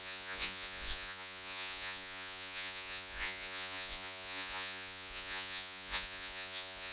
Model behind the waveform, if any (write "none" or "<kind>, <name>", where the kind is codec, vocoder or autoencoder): vocoder, Vocos